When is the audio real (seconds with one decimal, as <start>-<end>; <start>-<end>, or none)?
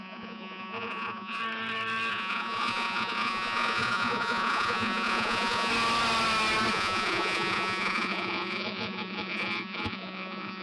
1.4-2.1; 5.7-6.7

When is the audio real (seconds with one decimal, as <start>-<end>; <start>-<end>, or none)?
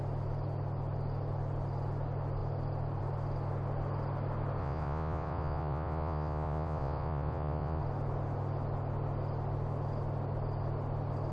0.0-4.6; 7.8-11.3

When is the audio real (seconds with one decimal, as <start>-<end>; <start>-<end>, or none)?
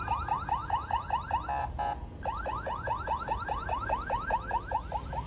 0.0-0.6; 1.1-1.6; 4.8-5.3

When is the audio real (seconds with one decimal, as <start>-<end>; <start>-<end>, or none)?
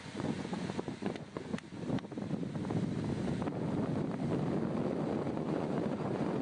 1.5-5.3